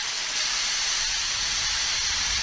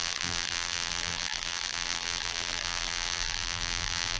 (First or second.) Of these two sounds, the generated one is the second